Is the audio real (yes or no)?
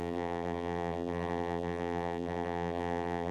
no